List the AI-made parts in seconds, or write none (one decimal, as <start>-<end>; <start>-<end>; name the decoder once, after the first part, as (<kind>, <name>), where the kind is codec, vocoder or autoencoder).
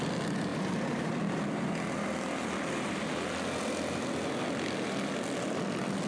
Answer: 0.5-1.1 (vocoder, BigVGAN v2)